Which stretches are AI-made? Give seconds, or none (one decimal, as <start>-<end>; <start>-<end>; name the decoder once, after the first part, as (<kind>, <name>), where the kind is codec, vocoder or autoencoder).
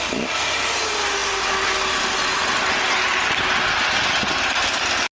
none